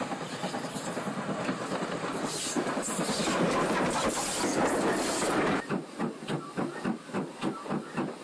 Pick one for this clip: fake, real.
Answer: real